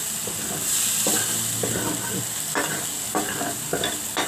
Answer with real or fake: real